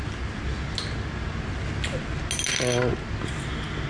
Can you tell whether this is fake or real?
real